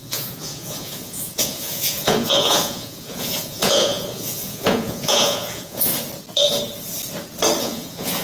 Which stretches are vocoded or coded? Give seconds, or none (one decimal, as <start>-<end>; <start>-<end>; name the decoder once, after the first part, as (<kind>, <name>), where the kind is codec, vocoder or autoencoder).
0.0-5.9 (vocoder, Vocos); 7.6-8.2